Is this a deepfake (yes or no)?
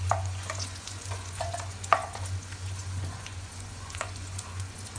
yes